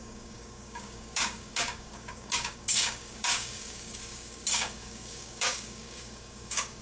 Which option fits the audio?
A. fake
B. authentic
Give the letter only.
A